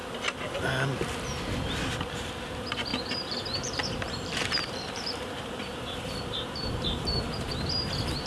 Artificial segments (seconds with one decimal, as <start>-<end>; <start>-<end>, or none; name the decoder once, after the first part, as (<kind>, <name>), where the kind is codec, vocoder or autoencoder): 2.9-7.5 (vocoder, BigVGAN v2)